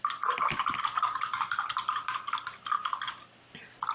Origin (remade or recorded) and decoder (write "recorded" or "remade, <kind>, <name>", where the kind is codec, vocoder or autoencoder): recorded